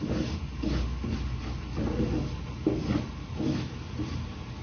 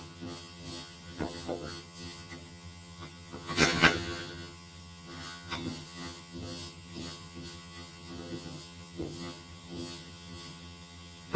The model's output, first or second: second